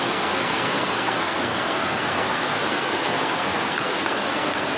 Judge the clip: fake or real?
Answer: fake